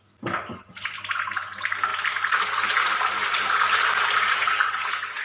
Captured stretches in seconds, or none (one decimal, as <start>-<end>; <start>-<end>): 0.0-5.2